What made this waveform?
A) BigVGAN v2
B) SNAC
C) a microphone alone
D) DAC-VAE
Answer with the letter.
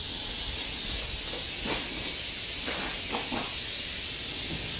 C